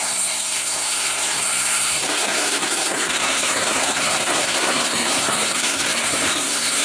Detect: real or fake fake